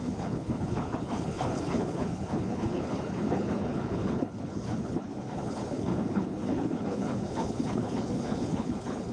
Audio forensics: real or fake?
fake